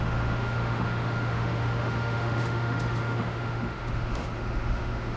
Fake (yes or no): yes